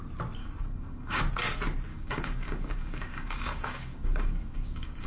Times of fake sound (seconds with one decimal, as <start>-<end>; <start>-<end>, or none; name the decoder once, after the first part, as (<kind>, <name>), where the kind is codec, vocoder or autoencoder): 0.4-1.2 (codec, DAC); 1.9-5.1